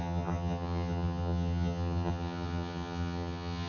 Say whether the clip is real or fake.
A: fake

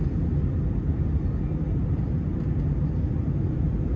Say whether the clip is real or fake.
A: real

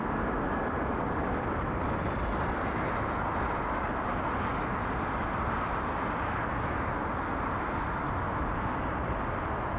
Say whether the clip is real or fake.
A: real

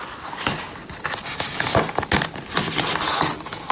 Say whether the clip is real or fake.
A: real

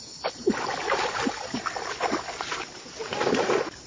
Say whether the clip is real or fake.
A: real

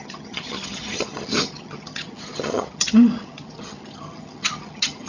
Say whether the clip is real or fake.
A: fake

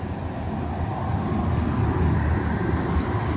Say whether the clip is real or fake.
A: real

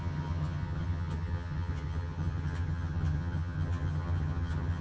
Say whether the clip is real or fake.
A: fake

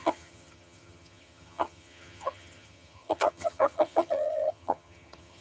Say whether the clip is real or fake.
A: fake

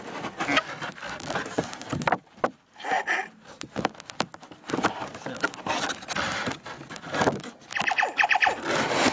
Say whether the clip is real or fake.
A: real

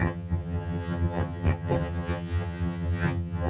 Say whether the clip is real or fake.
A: fake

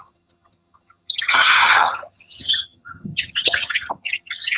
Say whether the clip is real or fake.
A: fake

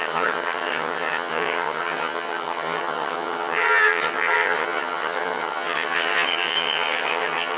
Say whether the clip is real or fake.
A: fake